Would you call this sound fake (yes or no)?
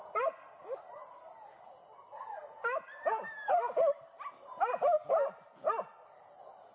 no